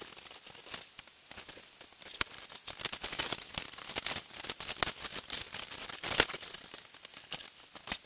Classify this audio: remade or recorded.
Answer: recorded